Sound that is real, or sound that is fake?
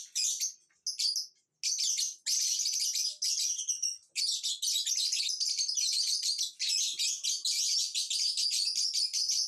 real